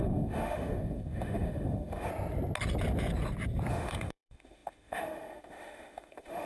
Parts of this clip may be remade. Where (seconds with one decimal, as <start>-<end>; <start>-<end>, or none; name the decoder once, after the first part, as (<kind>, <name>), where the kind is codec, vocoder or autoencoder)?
0.0-2.1 (autoencoder, DAC-VAE); 3.7-6.5